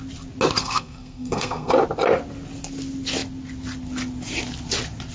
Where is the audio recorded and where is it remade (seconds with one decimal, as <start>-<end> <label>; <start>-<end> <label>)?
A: 0.0-0.6 recorded; 0.6-1.7 remade; 1.7-5.1 recorded